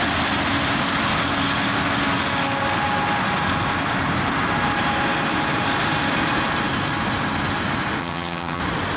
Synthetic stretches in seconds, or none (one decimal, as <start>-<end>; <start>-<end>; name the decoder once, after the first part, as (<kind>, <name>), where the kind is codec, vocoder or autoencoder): 8.0-8.6 (vocoder, HiFi-GAN)